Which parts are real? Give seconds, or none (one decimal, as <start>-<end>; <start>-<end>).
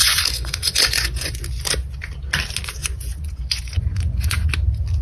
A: 1.4-2.8; 4.5-5.0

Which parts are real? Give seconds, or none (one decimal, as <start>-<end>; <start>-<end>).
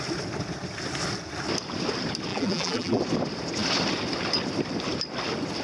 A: 0.0-2.3; 3.0-5.6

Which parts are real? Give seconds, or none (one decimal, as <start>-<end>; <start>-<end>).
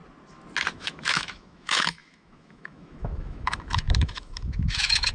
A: 0.0-0.7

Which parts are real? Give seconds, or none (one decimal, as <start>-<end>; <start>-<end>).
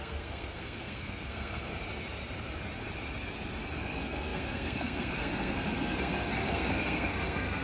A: 1.7-3.8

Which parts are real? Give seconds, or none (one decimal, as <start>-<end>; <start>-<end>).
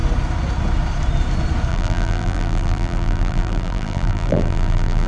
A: 0.0-1.7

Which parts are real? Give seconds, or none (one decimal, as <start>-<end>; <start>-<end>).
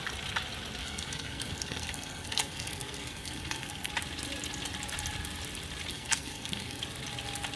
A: 0.0-0.8; 3.9-5.9; 6.8-7.6